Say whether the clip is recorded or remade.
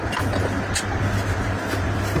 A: recorded